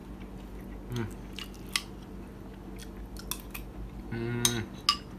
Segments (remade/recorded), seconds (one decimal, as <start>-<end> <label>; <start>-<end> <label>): 0.0-5.2 recorded